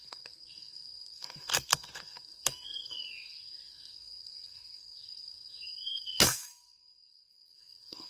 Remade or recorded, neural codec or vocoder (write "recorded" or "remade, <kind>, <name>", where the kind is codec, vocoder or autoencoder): remade, codec, SNAC